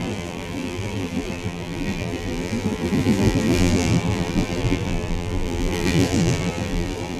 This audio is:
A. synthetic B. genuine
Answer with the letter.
A